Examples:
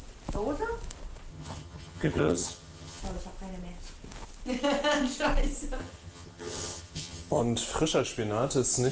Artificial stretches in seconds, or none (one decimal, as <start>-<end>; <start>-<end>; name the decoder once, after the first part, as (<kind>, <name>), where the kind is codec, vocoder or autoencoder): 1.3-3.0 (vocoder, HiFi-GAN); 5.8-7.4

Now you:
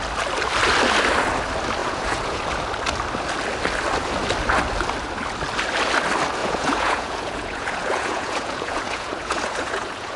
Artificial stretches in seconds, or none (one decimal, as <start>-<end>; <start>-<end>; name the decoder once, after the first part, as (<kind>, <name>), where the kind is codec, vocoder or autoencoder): 1.8-2.4 (vocoder, Vocos); 6.4-10.2

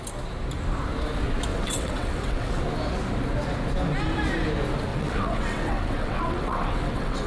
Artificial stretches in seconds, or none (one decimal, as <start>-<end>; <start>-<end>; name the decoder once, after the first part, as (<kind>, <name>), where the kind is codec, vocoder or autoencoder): 1.5-2.6 (vocoder, WaveNeXt); 4.9-7.3